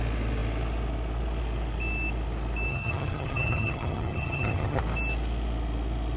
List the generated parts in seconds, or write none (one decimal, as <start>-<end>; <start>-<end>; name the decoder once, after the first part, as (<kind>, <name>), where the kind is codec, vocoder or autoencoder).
2.7-4.8 (vocoder, HiFi-GAN)